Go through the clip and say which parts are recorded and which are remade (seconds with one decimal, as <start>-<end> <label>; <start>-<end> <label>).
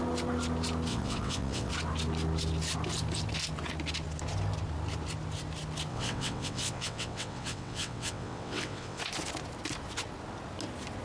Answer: 0.0-0.9 recorded; 0.9-1.7 remade; 1.7-5.9 recorded; 5.9-9.0 remade; 9.0-11.0 recorded